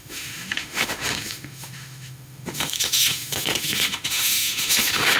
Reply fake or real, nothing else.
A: fake